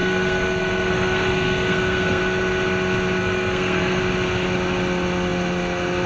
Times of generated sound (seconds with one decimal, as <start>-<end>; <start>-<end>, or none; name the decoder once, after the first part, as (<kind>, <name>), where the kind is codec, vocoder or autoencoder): 0.0-2.2 (codec, SNAC); 3.2-4.0